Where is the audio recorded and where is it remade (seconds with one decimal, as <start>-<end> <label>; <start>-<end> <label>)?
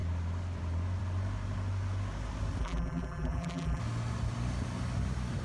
0.0-2.6 recorded; 2.6-3.8 remade; 3.8-5.4 recorded